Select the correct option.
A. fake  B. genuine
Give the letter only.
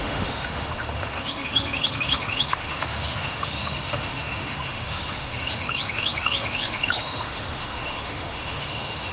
A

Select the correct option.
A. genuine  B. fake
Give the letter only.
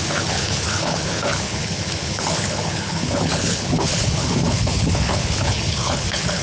B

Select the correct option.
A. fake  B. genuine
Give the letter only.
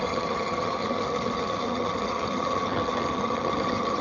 A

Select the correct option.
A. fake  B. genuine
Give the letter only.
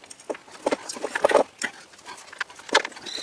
B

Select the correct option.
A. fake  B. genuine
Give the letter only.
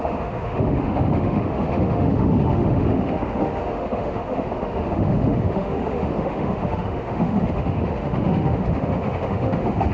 A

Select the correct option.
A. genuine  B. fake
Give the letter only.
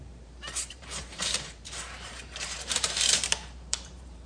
B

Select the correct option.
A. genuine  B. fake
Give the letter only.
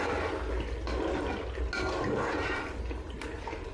A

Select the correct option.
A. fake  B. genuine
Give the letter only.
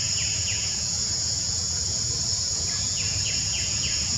A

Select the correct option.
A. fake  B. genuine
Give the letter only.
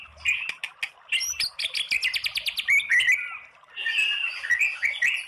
B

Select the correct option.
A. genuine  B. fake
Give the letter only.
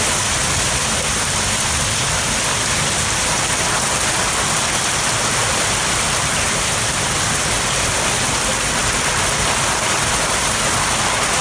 A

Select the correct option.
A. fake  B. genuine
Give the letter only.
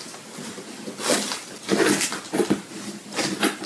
B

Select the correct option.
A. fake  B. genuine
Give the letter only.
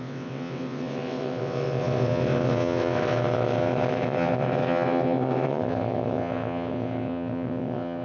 A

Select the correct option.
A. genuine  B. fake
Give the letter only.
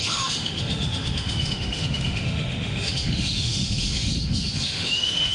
B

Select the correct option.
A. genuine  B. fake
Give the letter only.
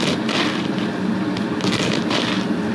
A